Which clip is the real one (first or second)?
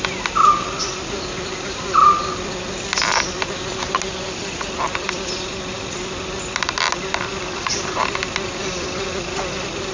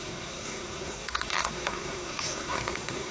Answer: first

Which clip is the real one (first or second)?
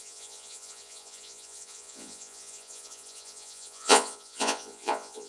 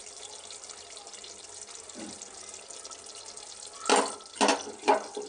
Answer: second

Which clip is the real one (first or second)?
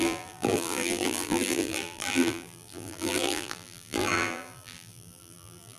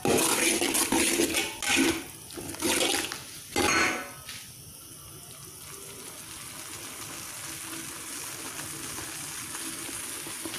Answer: second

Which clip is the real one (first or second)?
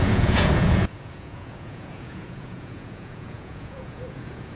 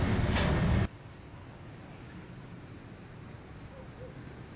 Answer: second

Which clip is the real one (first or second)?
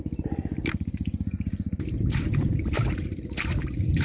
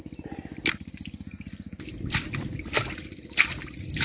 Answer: second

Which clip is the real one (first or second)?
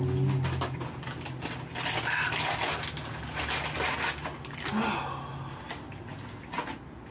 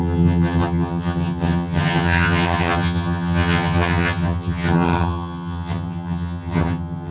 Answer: first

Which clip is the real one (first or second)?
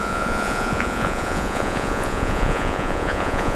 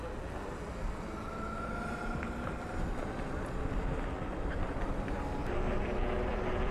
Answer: second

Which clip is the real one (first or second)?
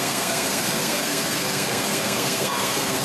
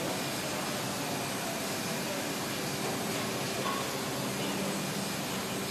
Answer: second